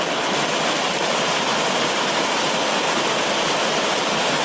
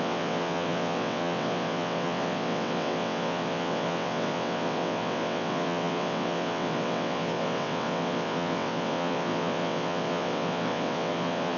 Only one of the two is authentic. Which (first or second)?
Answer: first